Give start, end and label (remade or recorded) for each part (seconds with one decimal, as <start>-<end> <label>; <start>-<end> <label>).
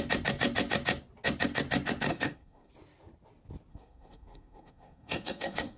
0.0-2.1 recorded; 2.1-2.7 remade; 2.7-3.7 recorded; 3.7-5.8 remade